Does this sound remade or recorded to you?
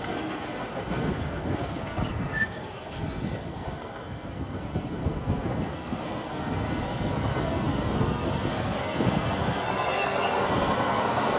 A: remade